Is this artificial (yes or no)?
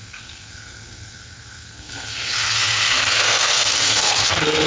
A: yes